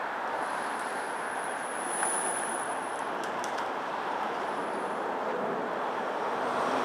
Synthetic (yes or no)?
yes